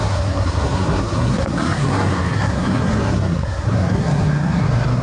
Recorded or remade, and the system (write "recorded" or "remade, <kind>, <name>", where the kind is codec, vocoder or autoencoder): remade, codec, SNAC